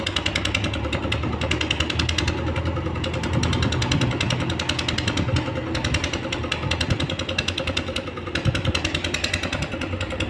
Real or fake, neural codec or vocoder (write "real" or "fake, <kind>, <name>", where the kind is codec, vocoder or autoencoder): real